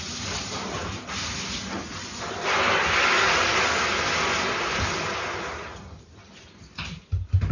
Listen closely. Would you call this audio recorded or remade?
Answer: recorded